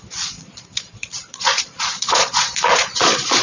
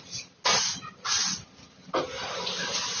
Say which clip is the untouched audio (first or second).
second